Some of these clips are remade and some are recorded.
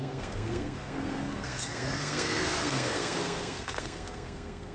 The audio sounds remade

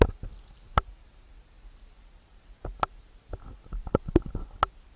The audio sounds recorded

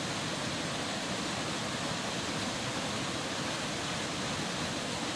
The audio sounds recorded